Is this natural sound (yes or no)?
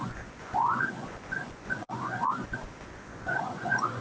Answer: no